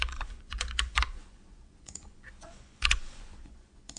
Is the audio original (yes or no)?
no